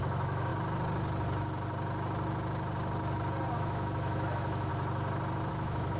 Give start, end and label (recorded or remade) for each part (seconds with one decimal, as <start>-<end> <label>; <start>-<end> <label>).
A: 0.0-0.5 remade; 0.5-3.5 recorded; 3.5-4.7 remade; 4.7-5.5 recorded; 5.5-6.0 remade